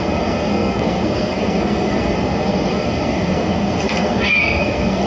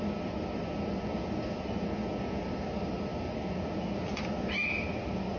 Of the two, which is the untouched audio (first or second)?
second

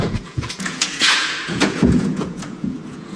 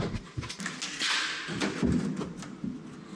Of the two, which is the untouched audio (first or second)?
second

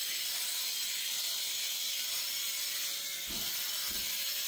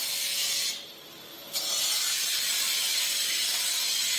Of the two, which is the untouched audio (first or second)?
second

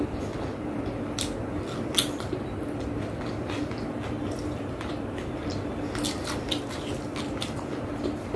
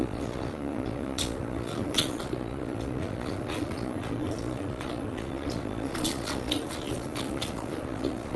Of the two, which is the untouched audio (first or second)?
first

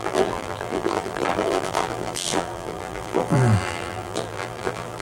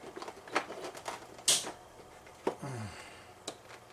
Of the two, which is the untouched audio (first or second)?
second